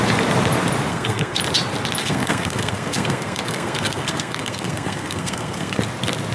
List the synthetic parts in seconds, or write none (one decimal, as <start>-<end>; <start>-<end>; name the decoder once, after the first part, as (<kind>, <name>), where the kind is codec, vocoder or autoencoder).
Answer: 0.9-1.4 (codec, SNAC); 2.0-5.8